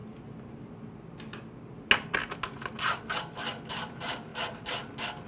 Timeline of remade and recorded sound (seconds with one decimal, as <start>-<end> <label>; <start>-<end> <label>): 0.0-5.3 recorded